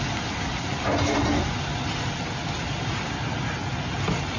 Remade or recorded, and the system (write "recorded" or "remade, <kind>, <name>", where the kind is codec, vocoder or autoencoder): recorded